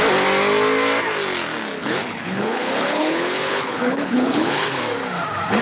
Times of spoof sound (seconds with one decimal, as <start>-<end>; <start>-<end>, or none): 1.8-4.8